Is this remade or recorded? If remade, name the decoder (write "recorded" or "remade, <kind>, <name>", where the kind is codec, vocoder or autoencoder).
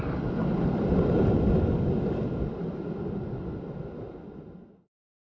recorded